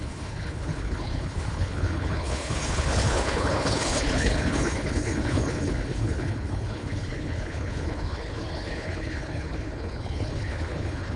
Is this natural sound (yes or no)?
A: no